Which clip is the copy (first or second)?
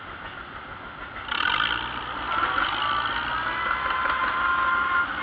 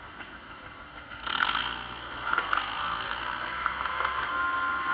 second